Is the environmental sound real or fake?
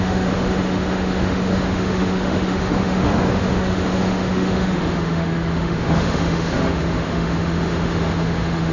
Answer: fake